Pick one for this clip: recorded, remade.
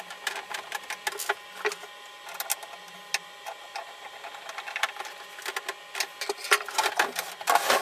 recorded